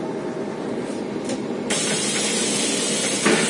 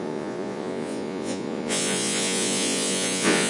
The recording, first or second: first